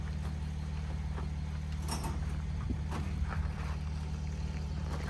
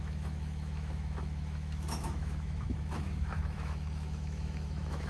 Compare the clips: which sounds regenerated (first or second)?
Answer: second